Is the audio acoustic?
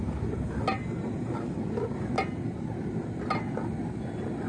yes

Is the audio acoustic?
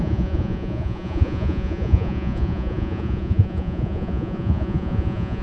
no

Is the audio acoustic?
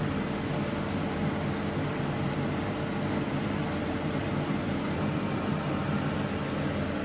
yes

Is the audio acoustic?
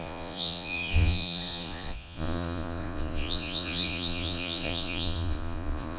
no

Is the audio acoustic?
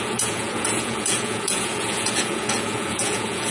no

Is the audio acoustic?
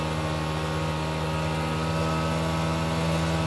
yes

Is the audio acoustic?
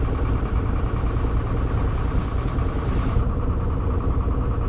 yes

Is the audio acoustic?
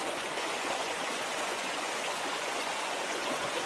no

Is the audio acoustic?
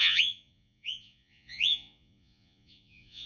no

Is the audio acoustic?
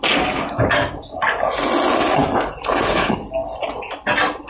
yes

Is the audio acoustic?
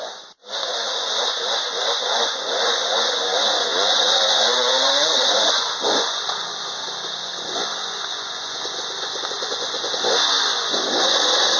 no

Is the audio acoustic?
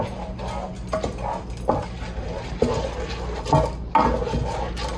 yes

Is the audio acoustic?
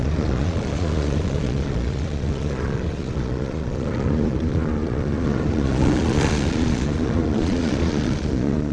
no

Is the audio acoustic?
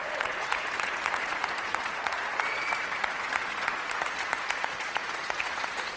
no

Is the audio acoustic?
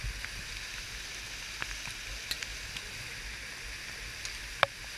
yes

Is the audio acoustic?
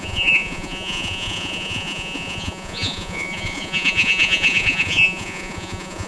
no